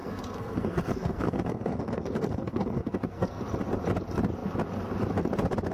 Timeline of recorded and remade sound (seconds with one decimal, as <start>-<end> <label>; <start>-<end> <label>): 0.0-3.4 remade; 3.4-5.7 recorded